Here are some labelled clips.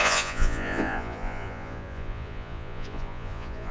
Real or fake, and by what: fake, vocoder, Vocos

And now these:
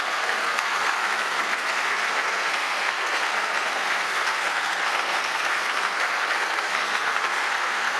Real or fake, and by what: fake, codec, SNAC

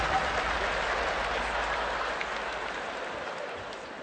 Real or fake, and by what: real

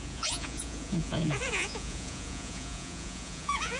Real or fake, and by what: fake, vocoder, Vocos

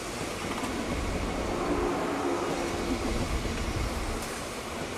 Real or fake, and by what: real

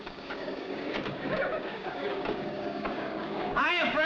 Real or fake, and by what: fake, codec, DAC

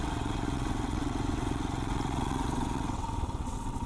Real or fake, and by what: fake, vocoder, WaveNeXt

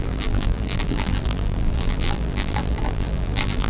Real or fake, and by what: fake, vocoder, BigVGAN v2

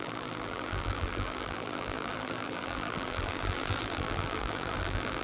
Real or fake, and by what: fake, vocoder, BigVGAN v2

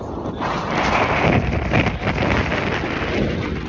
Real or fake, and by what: real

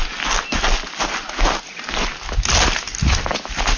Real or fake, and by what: real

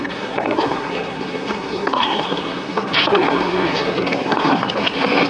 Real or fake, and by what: fake, codec, SNAC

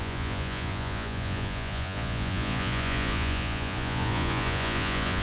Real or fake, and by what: fake, vocoder, Vocos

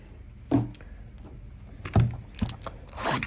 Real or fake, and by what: real